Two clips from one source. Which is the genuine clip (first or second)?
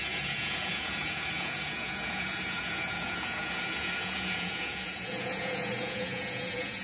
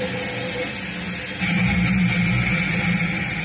second